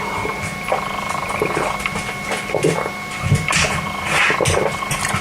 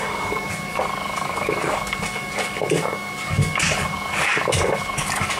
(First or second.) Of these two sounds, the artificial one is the second